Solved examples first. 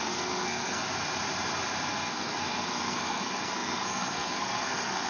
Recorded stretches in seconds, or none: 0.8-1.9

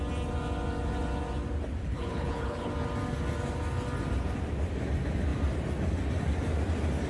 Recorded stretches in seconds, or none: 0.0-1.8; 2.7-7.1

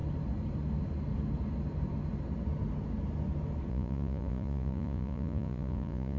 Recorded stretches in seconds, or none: 0.0-3.7

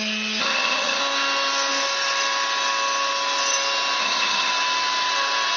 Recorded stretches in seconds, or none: 0.0-0.4; 1.0-4.0; 4.5-5.6

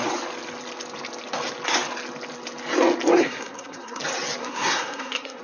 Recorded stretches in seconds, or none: 0.0-3.1; 4.0-4.4

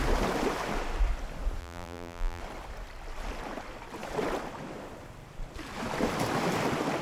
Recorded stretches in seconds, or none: 0.0-1.6; 2.4-7.0